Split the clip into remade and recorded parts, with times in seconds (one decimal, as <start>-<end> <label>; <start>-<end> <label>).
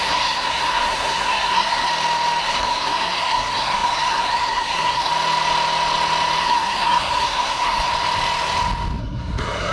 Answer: 0.0-1.9 remade; 1.9-2.4 recorded; 2.4-5.1 remade; 5.1-6.4 recorded; 6.4-7.9 remade; 7.9-9.0 recorded; 9.0-9.7 remade